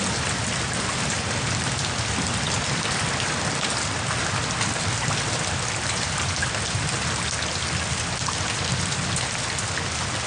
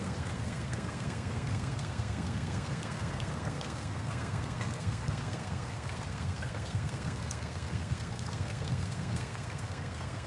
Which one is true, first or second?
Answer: first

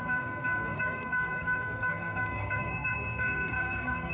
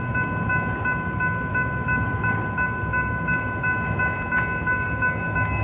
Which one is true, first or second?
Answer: second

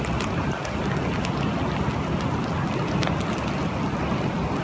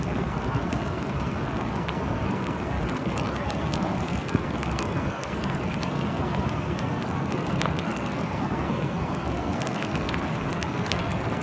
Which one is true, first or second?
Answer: first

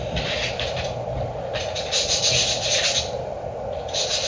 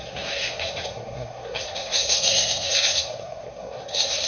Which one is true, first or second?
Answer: first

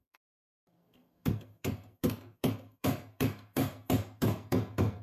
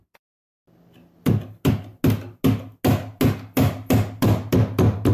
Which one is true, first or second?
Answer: second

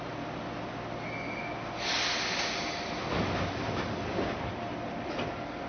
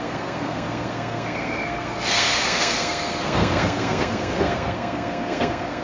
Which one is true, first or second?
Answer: first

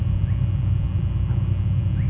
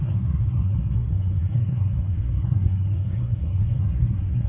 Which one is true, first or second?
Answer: first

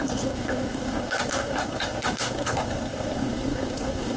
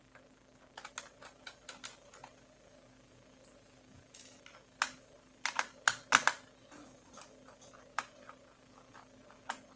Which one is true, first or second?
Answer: second